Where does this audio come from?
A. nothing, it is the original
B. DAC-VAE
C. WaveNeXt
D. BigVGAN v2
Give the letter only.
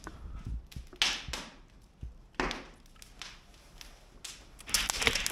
A